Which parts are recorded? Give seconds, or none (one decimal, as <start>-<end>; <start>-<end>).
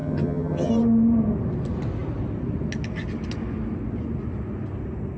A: 0.7-5.2